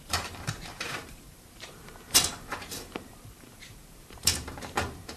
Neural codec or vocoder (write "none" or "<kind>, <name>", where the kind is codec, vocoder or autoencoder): vocoder, BigVGAN v2